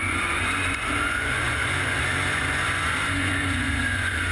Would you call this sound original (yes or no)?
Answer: no